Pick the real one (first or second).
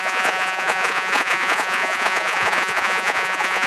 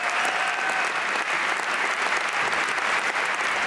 second